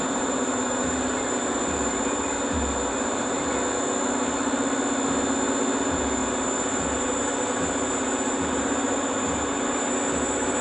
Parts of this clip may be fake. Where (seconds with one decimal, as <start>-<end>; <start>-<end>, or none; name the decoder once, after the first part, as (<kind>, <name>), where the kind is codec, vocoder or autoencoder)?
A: 0.0-3.5 (vocoder, BigVGAN v2); 5.8-10.6